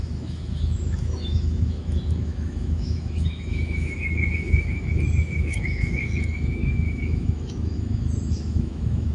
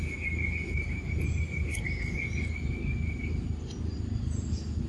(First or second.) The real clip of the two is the second